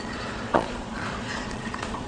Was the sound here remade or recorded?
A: remade